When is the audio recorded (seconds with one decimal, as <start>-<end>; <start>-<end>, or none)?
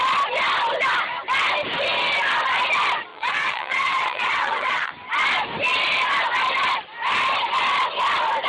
0.0-3.1; 4.9-8.5